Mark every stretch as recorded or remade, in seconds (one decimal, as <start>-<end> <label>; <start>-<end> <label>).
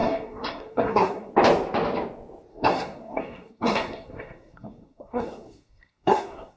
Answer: 0.0-1.3 remade; 1.3-2.5 recorded; 2.5-6.6 remade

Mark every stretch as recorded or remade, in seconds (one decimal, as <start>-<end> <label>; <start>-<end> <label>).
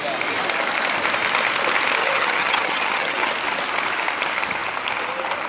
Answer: 0.0-2.0 recorded; 2.0-3.3 remade; 3.3-5.5 recorded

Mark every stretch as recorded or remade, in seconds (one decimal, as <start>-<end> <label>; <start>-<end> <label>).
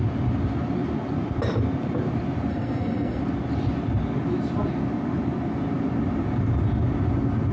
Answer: 0.0-2.5 recorded; 2.5-3.2 remade; 3.2-7.5 recorded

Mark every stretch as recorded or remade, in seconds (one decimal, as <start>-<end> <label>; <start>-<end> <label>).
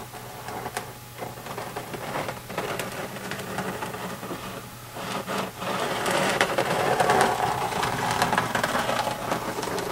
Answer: 0.0-3.0 recorded; 3.0-7.8 remade; 7.8-9.9 recorded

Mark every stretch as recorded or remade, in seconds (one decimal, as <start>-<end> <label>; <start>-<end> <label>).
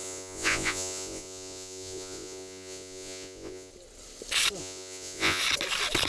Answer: 0.0-3.7 remade; 3.7-4.6 recorded; 4.6-5.4 remade; 5.4-6.1 recorded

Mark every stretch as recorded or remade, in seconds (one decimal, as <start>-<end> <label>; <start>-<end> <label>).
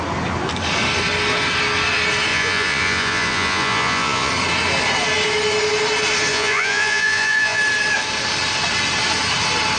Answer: 0.0-2.3 recorded; 2.3-4.3 remade; 4.3-6.3 recorded; 6.3-7.6 remade; 7.6-9.8 recorded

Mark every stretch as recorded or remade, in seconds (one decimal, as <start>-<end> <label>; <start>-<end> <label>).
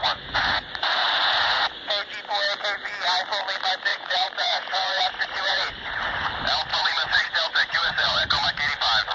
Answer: 0.0-1.9 remade; 1.9-3.9 recorded; 3.9-6.3 remade; 6.3-6.7 recorded; 6.7-8.5 remade; 8.5-9.1 recorded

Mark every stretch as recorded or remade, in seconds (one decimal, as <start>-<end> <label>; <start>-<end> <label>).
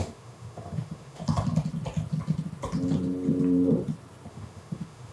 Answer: 0.0-1.2 remade; 1.2-4.3 recorded; 4.3-5.1 remade